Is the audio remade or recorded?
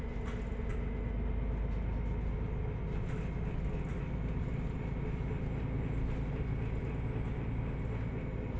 recorded